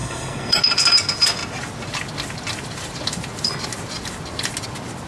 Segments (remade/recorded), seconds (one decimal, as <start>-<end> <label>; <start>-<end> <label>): 0.0-0.6 remade; 0.6-5.1 recorded